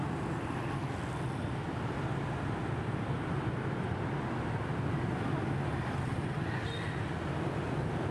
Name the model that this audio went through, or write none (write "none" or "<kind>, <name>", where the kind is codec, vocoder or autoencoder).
none